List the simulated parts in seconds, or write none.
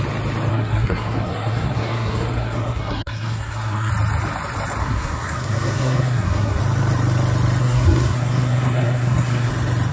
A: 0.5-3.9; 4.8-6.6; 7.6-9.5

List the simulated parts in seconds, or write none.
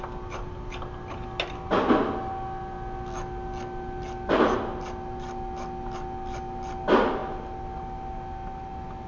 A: none